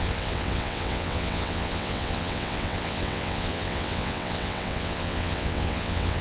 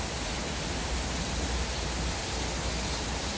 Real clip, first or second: second